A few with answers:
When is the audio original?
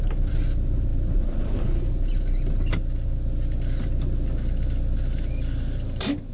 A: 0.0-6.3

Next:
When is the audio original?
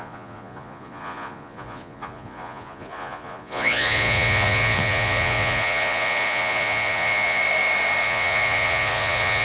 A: 7.4-8.0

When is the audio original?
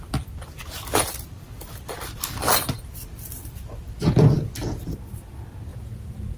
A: 0.0-5.7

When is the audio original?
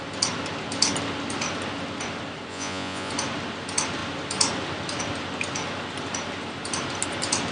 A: 0.0-2.5; 3.1-7.5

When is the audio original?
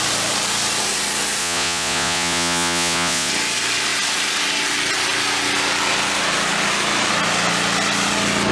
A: 0.0-1.4; 3.3-8.5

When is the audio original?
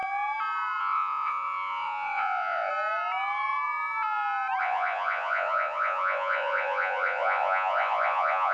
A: 0.0-0.8; 2.7-4.6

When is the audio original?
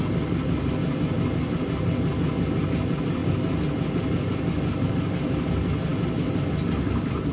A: 0.0-7.3